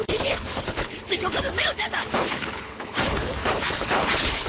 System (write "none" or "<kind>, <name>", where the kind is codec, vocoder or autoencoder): codec, HILCodec